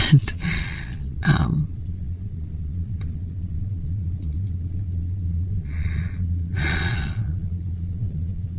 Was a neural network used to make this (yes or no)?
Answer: yes